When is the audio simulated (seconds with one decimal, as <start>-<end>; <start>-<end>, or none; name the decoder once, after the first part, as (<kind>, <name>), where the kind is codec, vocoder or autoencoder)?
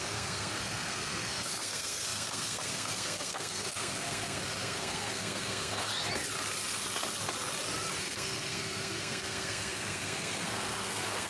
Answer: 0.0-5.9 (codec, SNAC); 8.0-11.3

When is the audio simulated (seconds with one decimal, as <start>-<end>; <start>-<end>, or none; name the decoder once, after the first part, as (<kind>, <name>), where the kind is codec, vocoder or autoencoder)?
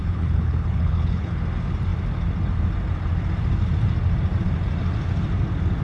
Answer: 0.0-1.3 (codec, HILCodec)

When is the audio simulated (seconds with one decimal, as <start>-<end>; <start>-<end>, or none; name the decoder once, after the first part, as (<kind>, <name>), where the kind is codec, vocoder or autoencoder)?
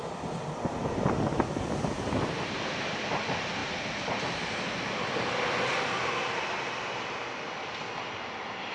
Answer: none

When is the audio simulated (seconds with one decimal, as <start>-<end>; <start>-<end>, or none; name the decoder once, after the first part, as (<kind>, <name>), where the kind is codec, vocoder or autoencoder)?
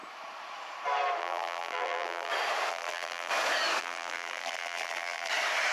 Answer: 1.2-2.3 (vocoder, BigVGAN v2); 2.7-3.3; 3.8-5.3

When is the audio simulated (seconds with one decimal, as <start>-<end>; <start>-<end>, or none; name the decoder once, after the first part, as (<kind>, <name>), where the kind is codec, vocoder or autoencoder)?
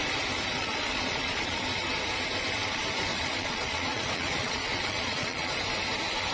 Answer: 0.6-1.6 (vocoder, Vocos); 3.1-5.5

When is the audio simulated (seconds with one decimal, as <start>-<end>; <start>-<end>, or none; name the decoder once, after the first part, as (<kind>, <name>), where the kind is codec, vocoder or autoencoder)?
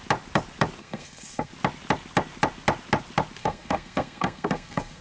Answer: 0.8-1.5 (codec, SNAC); 3.4-5.0